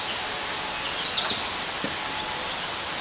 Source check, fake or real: real